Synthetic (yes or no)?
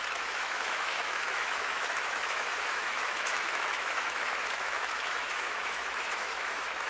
yes